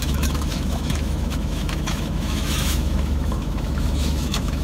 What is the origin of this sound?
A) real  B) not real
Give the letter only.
B